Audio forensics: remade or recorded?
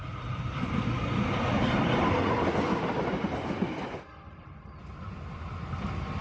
recorded